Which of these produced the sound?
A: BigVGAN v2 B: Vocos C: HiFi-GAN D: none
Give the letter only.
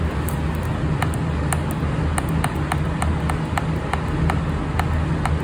D